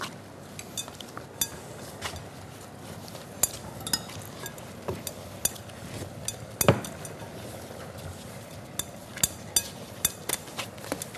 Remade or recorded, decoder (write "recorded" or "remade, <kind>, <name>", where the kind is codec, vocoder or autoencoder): recorded